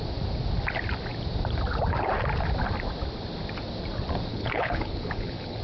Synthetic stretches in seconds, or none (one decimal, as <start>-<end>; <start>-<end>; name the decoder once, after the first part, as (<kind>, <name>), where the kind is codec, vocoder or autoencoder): 4.3-5.6 (codec, HILCodec)